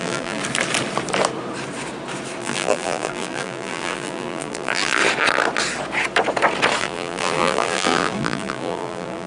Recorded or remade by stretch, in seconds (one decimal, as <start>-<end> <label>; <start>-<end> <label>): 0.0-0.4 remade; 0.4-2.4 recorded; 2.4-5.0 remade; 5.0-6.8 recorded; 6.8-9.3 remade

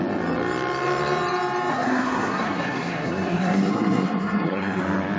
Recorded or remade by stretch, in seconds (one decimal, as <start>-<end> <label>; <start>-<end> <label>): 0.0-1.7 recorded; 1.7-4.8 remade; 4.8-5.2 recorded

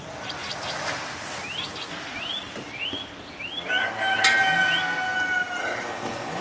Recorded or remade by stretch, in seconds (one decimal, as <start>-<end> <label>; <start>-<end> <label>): 0.0-5.6 recorded; 5.6-6.4 remade

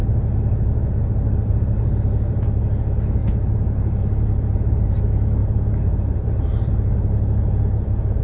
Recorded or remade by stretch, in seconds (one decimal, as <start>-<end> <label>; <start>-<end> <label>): 0.0-1.4 recorded; 1.4-2.6 remade; 2.6-3.2 recorded; 3.2-5.0 remade; 5.0-5.4 recorded; 5.4-8.2 remade

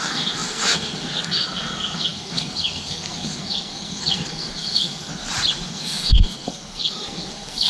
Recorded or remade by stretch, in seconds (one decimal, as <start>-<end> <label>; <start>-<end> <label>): 0.0-5.2 remade; 5.2-5.7 recorded; 5.7-7.7 remade

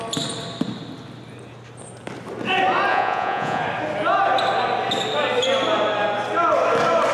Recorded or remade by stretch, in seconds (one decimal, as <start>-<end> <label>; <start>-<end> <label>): 0.0-2.9 recorded; 2.9-3.6 remade; 3.6-7.1 recorded